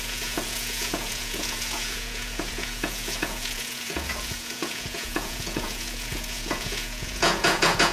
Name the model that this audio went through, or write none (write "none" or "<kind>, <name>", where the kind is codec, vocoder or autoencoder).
vocoder, Vocos